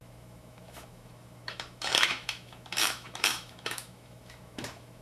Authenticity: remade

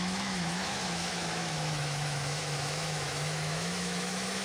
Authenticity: remade